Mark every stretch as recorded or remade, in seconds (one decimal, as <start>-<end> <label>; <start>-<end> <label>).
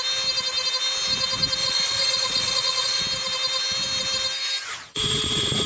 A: 0.0-1.6 recorded; 1.6-3.0 remade; 3.0-4.9 recorded; 4.9-5.7 remade